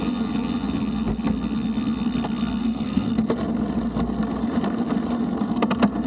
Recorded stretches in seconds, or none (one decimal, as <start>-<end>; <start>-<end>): 0.0-2.6; 3.1-6.1